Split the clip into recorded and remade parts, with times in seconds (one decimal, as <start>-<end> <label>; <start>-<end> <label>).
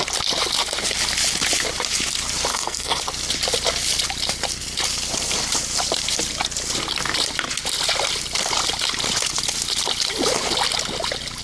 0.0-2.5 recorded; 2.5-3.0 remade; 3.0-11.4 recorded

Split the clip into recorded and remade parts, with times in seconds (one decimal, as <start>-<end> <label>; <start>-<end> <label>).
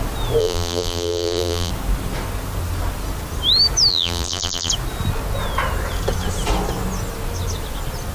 0.0-0.4 recorded; 0.4-1.7 remade; 1.7-3.9 recorded; 3.9-4.7 remade; 4.7-8.1 recorded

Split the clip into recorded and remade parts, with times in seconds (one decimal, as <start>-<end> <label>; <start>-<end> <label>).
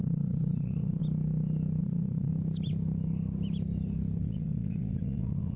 0.0-1.0 remade; 1.0-1.8 recorded; 1.8-2.3 remade; 2.3-4.2 recorded; 4.2-5.6 remade